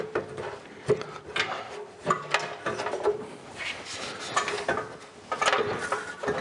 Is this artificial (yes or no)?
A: no